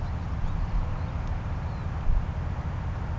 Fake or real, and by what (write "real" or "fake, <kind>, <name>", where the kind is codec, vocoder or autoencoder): real